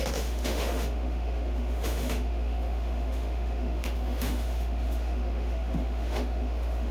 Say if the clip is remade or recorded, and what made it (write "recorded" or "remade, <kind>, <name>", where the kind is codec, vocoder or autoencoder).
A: remade, autoencoder, DAC-VAE